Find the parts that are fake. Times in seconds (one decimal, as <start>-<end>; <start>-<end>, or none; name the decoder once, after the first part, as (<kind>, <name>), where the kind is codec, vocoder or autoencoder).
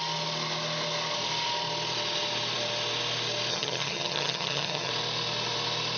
3.5-4.9 (vocoder, HiFi-GAN)